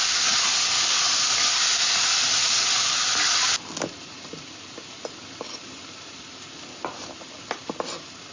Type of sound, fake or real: real